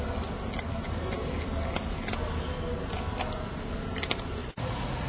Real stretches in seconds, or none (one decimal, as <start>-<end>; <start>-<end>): 0.0-4.4